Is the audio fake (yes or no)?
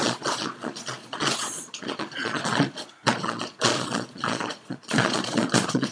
yes